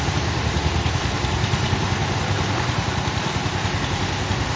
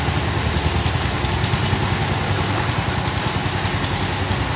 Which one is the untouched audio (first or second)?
second